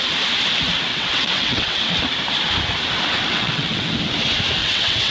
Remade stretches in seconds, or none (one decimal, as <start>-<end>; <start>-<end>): 0.9-2.0; 3.3-3.9; 4.6-5.1